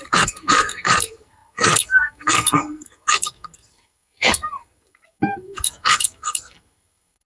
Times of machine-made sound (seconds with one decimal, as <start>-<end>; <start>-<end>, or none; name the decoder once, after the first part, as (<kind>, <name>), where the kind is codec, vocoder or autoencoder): 0.0-7.3 (codec, SNAC)